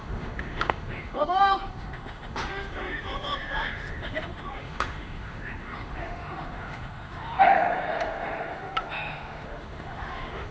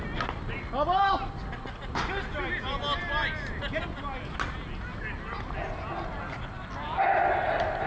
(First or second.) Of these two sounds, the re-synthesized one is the first